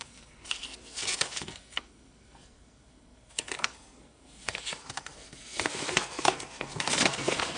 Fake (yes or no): yes